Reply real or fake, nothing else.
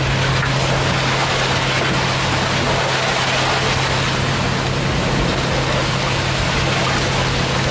real